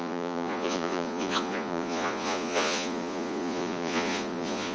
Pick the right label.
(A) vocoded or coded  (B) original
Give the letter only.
A